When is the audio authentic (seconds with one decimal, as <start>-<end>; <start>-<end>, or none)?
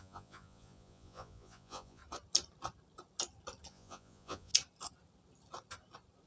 2.0-3.7; 4.5-6.3